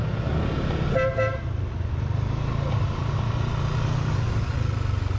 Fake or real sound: real